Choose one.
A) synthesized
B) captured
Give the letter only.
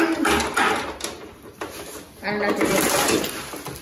B